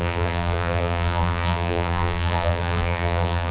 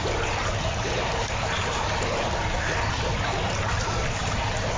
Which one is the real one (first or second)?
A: second